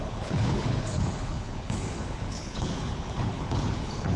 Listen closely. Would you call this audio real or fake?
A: fake